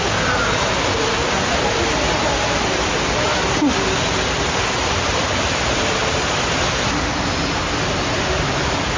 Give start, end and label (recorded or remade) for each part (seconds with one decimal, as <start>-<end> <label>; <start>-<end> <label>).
0.0-9.0 recorded